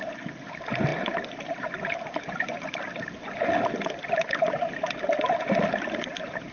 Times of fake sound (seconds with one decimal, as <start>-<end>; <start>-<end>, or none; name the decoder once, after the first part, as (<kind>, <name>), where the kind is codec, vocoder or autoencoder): none